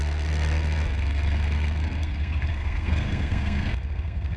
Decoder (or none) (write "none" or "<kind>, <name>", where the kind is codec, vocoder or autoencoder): codec, SNAC